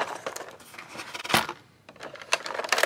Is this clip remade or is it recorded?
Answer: remade